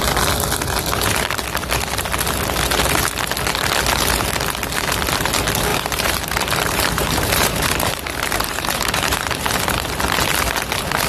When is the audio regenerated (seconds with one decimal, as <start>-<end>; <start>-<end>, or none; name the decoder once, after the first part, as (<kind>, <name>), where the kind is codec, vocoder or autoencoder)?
5.7-9.5 (vocoder, BigVGAN v2)